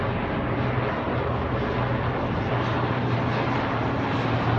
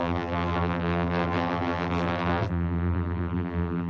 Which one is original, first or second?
first